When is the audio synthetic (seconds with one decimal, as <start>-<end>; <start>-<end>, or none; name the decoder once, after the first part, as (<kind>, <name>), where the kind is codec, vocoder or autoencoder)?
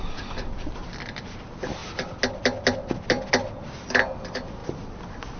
none